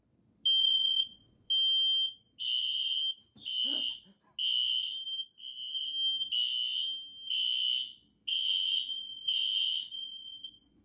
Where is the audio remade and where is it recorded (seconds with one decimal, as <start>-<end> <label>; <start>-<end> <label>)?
0.0-0.6 recorded; 0.6-1.5 remade; 1.5-8.3 recorded; 8.3-10.8 remade